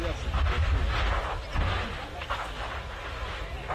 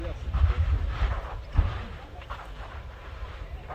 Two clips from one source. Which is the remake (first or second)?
second